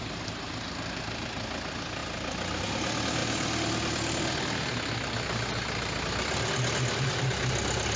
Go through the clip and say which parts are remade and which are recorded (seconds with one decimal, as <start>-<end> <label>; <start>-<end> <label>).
0.0-8.0 recorded